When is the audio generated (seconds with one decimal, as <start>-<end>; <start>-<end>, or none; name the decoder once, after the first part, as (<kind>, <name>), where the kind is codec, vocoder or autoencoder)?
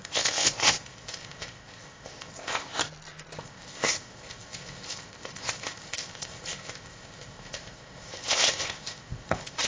0.0-2.8 (codec, ZipCodec); 3.4-9.7